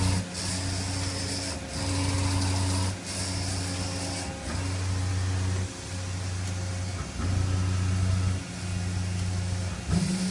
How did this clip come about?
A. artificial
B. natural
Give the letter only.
B